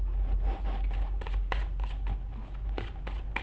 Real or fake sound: real